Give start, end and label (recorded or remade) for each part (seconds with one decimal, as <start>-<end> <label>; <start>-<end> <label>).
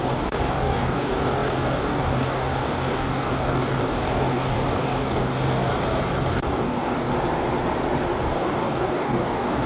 0.0-5.7 remade; 5.7-6.3 recorded; 6.3-7.1 remade; 7.1-8.2 recorded; 8.2-9.7 remade